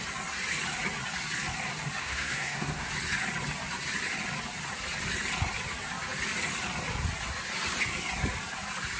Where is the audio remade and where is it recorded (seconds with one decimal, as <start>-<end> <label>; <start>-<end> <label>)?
0.0-2.0 recorded; 2.0-2.9 remade; 2.9-9.0 recorded